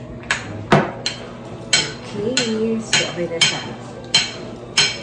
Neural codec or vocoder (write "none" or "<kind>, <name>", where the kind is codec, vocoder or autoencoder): none